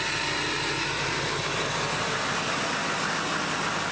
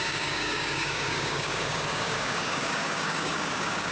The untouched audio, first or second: first